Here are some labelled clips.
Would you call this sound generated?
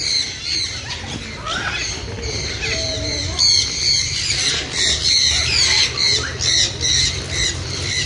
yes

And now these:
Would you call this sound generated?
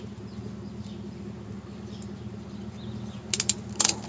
no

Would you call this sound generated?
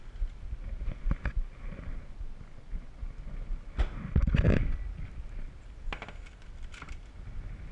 no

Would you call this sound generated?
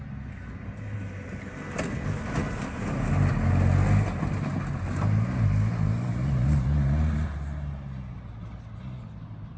no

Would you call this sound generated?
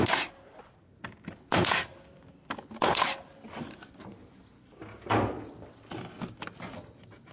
no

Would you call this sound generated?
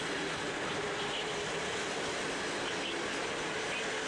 no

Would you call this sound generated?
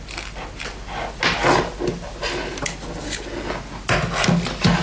no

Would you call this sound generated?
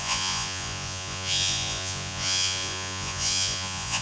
yes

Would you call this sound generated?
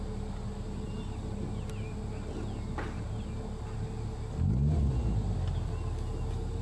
no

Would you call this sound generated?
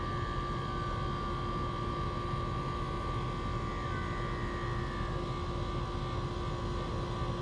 no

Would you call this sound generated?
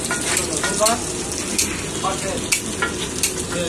no